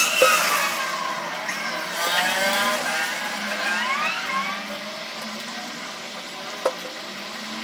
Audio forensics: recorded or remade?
recorded